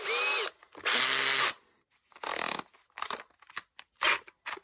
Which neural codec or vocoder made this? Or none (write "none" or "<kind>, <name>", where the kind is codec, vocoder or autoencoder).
none